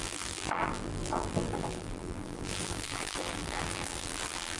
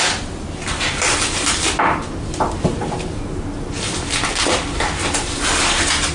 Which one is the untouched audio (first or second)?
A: second